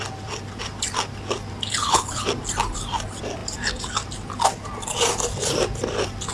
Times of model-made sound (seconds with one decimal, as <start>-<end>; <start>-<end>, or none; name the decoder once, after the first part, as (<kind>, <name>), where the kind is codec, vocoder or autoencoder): 1.8-2.3 (codec, HILCodec)

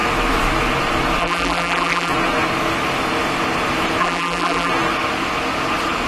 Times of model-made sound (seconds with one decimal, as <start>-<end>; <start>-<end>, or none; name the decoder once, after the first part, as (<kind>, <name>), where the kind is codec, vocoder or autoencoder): 1.2-2.1 (vocoder, BigVGAN v2); 4.0-4.7

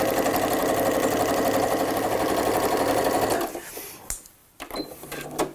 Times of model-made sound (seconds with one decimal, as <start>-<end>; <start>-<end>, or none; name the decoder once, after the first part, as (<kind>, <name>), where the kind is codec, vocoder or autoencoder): 4.4-5.1 (vocoder, BigVGAN v2)

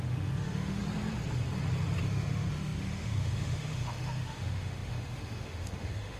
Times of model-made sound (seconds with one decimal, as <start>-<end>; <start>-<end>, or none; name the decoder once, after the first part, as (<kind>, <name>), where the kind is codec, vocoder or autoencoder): 0.0-0.8 (autoencoder, DAC-VAE); 2.0-6.2